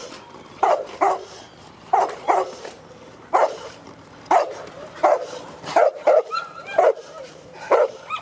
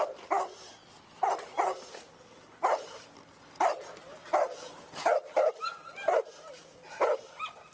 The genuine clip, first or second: second